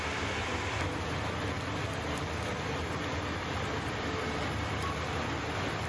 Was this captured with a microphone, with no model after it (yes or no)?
yes